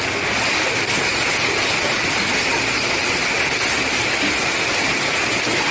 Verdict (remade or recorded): recorded